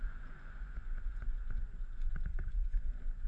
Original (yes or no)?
no